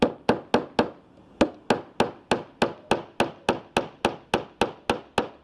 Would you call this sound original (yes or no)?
yes